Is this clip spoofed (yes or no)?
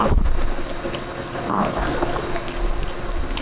no